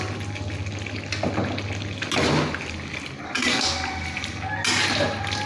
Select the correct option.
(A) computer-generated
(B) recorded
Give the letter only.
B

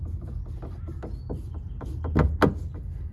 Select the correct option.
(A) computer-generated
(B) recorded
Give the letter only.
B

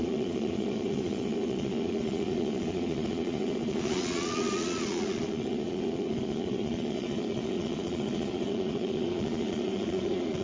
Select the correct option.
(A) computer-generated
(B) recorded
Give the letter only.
A